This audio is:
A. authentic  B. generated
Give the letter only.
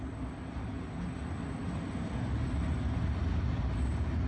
A